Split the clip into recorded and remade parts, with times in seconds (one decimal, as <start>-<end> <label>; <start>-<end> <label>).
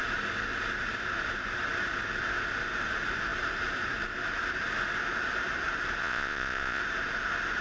0.0-6.0 recorded; 6.0-6.8 remade; 6.8-7.6 recorded